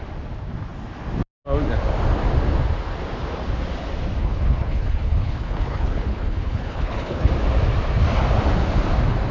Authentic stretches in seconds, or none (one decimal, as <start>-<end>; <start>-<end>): 0.0-4.2; 7.3-9.3